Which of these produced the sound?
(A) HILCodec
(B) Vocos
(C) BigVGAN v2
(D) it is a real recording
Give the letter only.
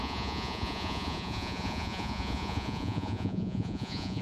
B